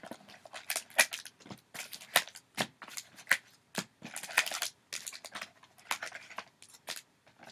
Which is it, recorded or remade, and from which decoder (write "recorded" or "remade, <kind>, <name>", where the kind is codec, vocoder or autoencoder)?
recorded